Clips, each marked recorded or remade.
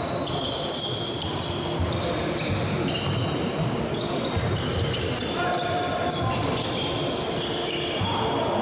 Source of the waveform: recorded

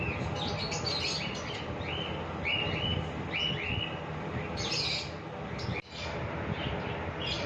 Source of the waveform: recorded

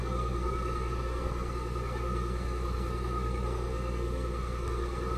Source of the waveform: remade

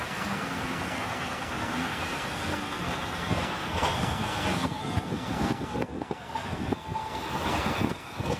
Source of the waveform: remade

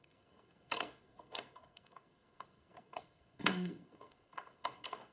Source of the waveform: remade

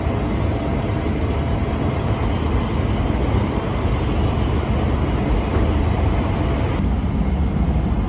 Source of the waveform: recorded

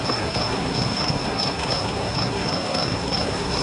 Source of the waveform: remade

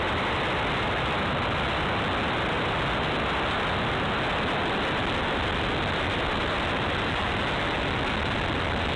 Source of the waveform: recorded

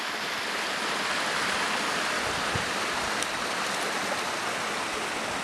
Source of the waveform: recorded